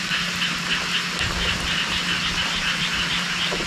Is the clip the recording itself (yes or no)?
yes